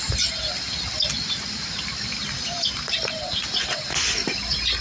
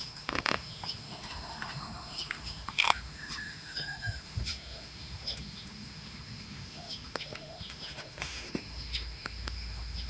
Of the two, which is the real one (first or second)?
first